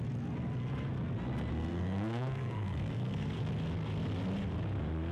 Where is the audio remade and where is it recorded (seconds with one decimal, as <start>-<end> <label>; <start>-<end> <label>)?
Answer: 0.0-1.5 recorded; 1.5-3.5 remade; 3.5-5.1 recorded